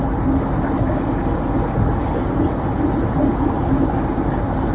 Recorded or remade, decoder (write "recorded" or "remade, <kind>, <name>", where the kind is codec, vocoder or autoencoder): recorded